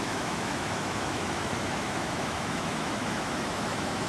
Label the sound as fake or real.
fake